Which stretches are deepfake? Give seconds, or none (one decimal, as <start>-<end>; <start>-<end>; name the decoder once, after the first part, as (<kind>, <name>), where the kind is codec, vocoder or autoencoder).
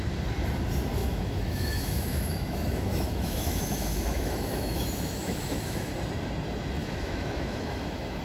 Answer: 1.0-5.9 (autoencoder, DAC-VAE); 6.8-8.2